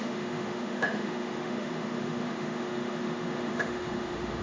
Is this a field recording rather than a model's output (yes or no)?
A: no